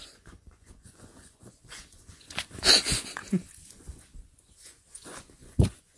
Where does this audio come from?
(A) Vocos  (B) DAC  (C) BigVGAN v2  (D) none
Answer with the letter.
A